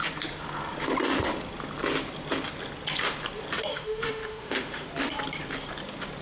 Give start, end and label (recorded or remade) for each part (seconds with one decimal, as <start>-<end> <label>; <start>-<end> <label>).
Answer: 0.0-3.7 recorded; 3.7-4.9 remade; 4.9-6.2 recorded